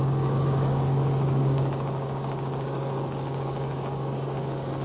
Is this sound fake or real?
fake